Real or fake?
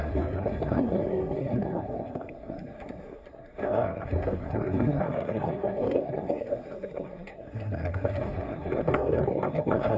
fake